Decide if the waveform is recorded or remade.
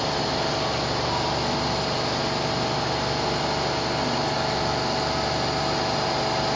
recorded